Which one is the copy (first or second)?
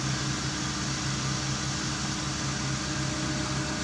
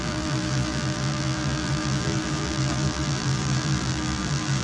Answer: second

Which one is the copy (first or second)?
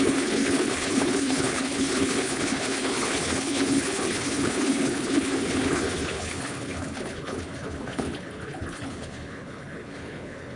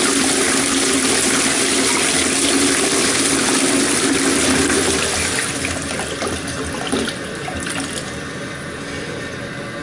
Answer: first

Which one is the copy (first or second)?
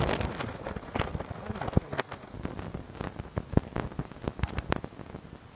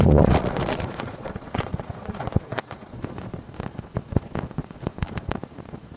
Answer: second